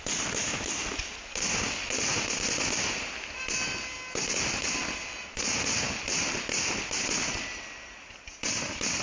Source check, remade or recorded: recorded